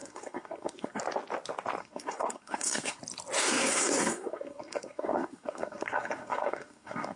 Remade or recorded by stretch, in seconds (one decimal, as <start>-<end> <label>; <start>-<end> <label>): 0.0-1.0 remade; 1.0-1.8 recorded; 1.8-3.0 remade; 3.0-3.4 recorded; 3.4-7.2 remade